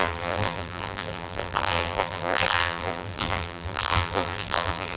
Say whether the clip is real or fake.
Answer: fake